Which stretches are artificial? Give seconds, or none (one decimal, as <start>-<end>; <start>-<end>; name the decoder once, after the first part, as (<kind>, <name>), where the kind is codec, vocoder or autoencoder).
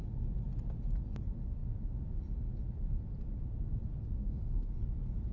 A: 4.2-4.7 (codec, SNAC)